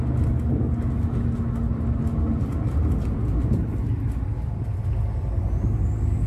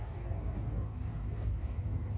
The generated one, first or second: second